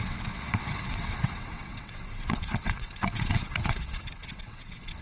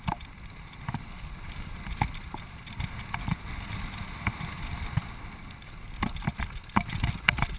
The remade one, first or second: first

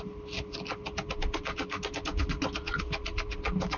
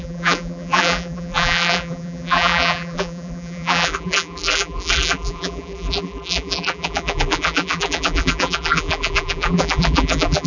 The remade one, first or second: second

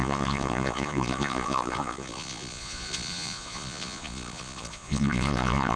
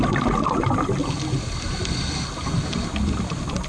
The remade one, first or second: first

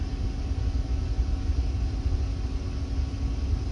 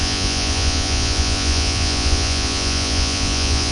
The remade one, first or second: second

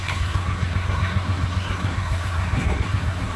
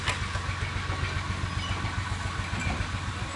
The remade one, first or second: first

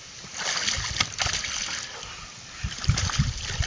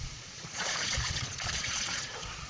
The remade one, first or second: second